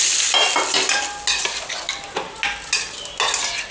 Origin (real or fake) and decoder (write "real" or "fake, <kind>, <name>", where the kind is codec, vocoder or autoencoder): real